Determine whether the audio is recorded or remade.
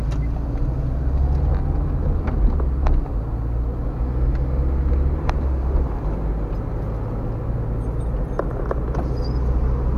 recorded